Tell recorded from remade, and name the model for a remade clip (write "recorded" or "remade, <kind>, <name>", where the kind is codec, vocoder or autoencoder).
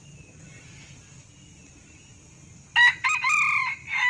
recorded